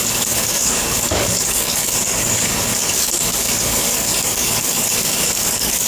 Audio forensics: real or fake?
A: fake